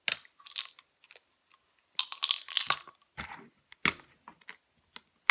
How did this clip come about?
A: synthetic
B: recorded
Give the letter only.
B